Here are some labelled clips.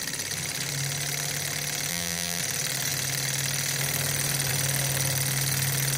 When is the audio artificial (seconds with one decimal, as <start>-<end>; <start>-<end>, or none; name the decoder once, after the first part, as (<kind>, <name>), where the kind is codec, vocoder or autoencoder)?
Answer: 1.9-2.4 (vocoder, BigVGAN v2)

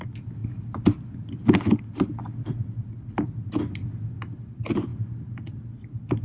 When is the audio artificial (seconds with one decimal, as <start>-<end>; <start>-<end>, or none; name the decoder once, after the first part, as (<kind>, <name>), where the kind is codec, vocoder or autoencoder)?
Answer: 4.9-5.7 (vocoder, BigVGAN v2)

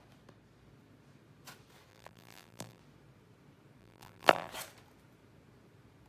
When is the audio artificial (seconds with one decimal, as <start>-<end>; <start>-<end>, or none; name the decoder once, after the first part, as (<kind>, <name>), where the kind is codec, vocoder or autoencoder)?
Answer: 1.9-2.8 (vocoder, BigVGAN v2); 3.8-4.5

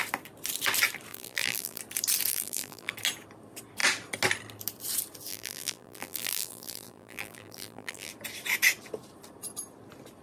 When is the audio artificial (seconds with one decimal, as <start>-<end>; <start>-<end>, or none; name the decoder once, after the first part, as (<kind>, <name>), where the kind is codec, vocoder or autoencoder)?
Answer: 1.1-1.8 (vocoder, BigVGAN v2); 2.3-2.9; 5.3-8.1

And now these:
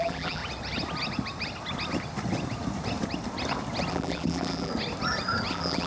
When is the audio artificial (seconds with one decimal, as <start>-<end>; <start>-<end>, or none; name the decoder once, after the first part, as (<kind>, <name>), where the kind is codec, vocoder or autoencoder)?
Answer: 0.0-0.4 (vocoder, BigVGAN v2); 3.9-4.7; 5.5-5.9

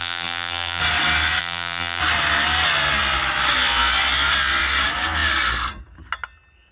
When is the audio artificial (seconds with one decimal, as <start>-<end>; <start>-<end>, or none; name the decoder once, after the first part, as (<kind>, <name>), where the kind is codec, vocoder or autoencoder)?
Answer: 0.0-0.8 (vocoder, BigVGAN v2); 1.4-2.0